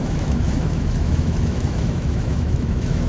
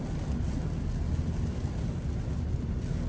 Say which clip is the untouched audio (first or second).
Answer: second